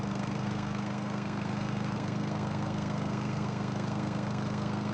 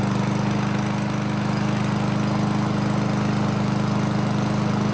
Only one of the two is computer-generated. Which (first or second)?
first